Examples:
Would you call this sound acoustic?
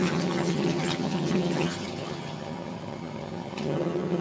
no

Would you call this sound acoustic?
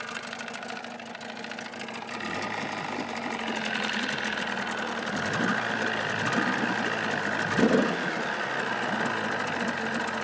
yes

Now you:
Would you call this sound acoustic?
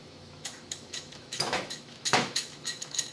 no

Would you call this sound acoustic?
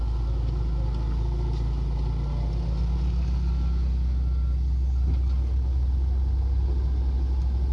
yes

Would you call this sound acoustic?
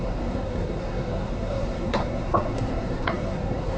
no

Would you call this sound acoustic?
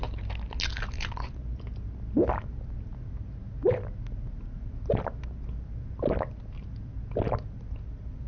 yes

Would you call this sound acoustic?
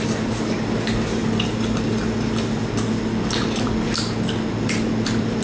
yes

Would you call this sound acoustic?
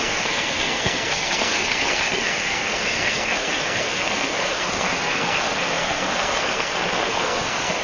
no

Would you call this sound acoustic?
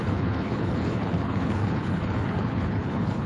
no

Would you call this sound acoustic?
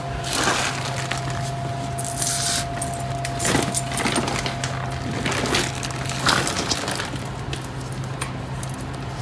yes